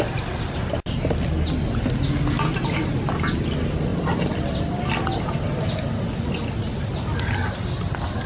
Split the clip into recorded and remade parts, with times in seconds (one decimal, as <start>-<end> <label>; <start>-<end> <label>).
0.0-8.3 recorded